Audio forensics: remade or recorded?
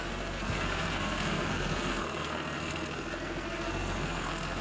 remade